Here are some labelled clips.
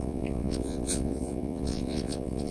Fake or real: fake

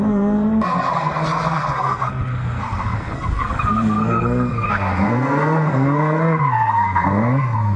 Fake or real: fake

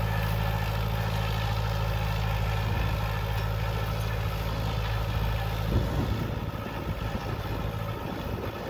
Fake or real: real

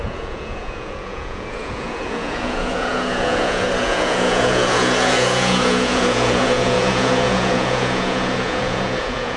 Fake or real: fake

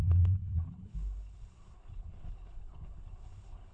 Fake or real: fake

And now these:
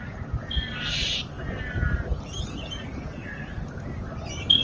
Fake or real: real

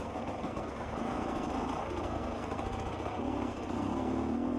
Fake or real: fake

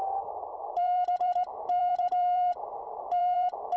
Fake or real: fake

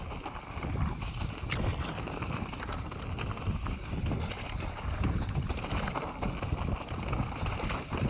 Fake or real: real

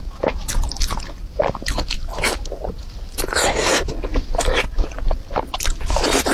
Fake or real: real